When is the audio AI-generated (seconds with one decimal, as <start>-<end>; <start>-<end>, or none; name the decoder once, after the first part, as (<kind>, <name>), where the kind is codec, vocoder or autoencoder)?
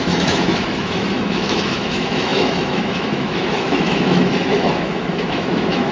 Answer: 0.0-5.9 (autoencoder, DAC-VAE)